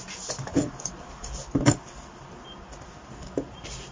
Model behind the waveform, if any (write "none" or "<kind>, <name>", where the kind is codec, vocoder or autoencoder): none